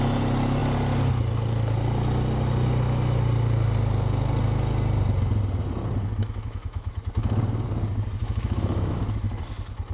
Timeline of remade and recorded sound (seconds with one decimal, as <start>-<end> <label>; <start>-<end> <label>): 0.0-6.2 recorded; 6.2-7.0 remade; 7.0-8.2 recorded; 8.2-9.0 remade; 9.0-9.9 recorded